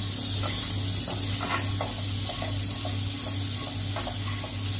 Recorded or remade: recorded